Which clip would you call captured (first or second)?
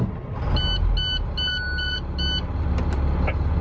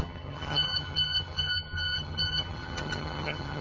first